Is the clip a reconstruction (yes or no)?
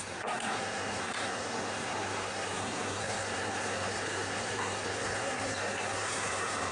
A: yes